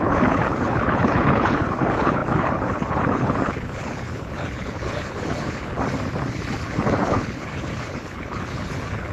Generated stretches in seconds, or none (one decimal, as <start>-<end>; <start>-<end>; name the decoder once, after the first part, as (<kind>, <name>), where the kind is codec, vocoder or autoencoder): 0.0-5.7 (codec, HILCodec); 6.6-9.1